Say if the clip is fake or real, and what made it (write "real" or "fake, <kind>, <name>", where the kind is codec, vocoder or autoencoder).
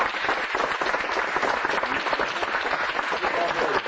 real